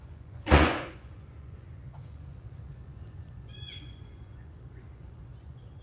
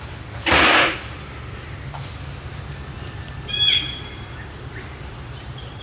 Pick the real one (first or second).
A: second